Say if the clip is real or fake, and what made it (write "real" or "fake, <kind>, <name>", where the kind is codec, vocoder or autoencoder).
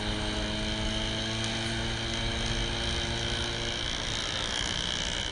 real